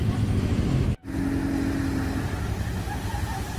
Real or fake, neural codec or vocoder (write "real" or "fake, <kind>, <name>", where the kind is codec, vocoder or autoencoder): real